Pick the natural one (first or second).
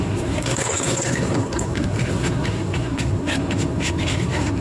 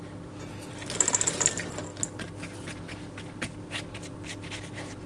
second